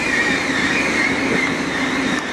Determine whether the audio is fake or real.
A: fake